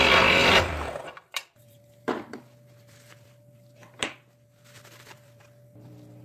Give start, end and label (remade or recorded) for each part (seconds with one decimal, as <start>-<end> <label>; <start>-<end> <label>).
0.0-3.8 remade; 3.8-4.7 recorded; 4.7-6.2 remade